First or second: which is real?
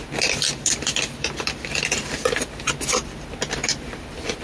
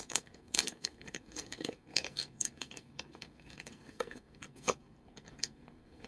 first